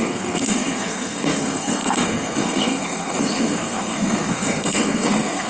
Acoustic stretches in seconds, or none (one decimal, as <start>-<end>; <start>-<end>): none